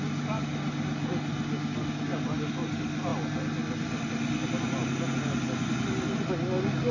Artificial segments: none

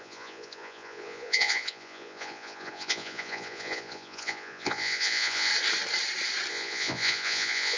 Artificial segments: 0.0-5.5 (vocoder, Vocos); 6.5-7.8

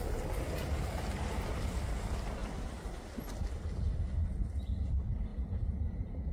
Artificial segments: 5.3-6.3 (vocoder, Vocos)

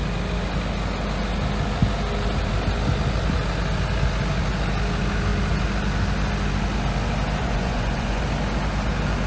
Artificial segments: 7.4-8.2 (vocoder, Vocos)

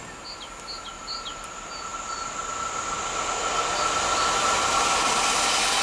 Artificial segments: none

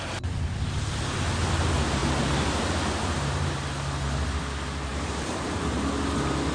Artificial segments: 2.0-3.5 (vocoder, BigVGAN v2); 4.9-5.6

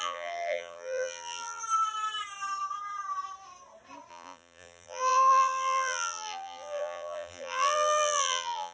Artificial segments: 0.0-1.6 (vocoder, BigVGAN v2); 4.1-8.7